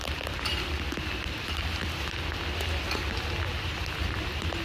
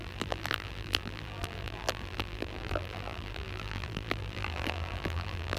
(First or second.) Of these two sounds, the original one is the first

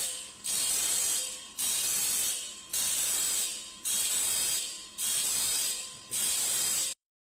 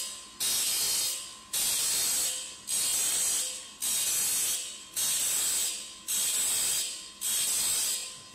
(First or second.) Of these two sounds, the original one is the second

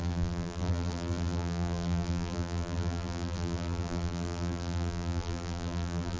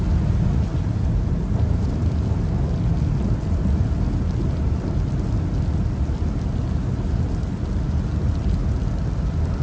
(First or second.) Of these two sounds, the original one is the second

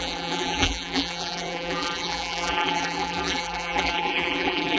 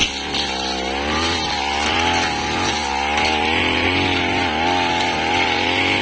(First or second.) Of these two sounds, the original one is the second